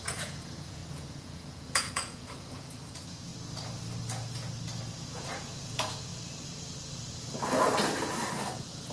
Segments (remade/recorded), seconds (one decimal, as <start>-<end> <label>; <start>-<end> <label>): 0.0-3.3 remade; 3.3-4.9 recorded; 4.9-6.1 remade; 6.1-8.5 recorded; 8.5-8.9 remade